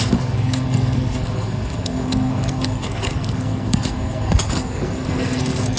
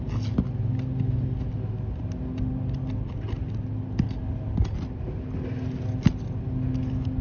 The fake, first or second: first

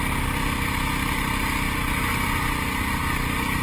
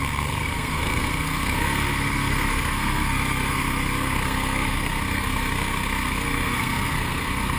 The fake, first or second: second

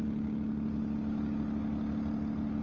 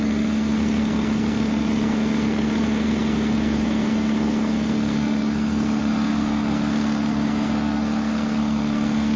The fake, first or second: second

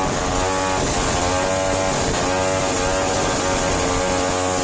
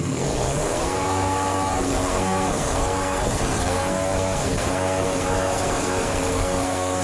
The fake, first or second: second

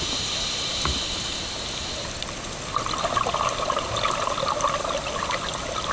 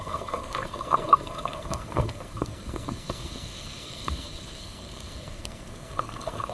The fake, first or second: second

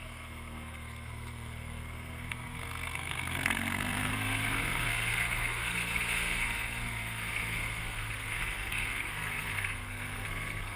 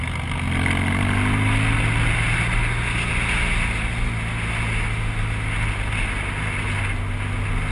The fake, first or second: first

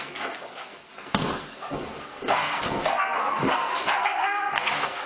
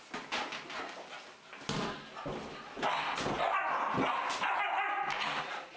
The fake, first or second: first